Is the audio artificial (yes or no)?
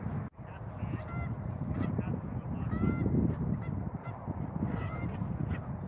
no